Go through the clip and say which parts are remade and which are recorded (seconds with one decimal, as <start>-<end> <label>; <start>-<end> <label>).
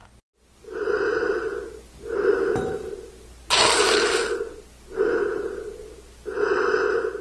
0.0-7.2 recorded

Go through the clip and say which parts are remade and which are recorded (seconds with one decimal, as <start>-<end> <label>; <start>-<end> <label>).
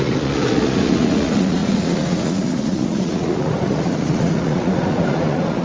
0.0-5.6 remade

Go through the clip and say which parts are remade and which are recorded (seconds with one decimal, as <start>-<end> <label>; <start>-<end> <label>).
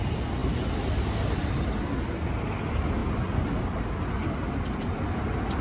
0.0-5.6 recorded